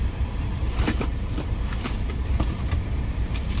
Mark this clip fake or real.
fake